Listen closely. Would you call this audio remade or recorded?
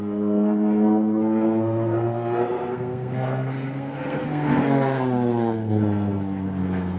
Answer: remade